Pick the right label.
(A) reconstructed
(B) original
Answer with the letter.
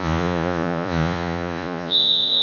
A